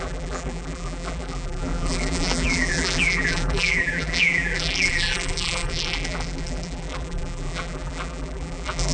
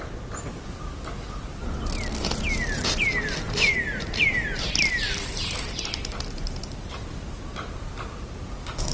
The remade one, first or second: first